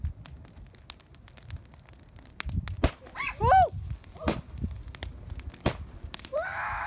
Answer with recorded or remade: recorded